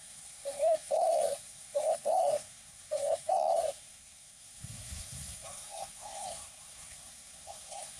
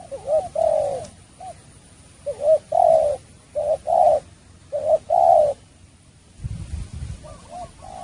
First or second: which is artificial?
first